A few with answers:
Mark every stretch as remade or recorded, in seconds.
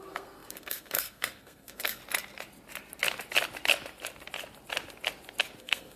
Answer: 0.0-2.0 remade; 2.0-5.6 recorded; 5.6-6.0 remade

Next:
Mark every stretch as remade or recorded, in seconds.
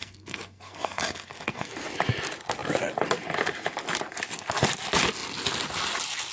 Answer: 0.0-1.7 remade; 1.7-6.3 recorded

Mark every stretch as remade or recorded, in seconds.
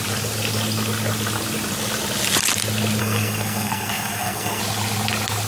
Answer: 0.0-3.0 recorded; 3.0-4.6 remade; 4.6-5.5 recorded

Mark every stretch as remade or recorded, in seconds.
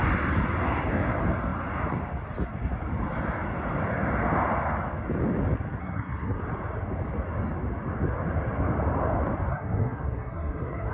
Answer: 0.0-5.8 recorded; 5.8-6.4 remade; 6.4-9.5 recorded; 9.5-10.9 remade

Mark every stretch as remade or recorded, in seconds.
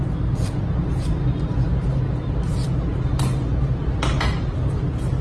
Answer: 0.0-5.2 recorded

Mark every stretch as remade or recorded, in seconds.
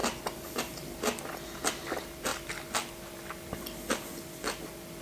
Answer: 0.0-5.0 recorded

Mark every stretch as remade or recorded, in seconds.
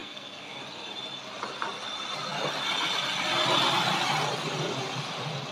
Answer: 0.0-0.6 remade; 0.6-5.5 recorded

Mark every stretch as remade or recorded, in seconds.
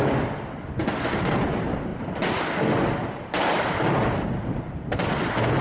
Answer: 0.0-5.6 recorded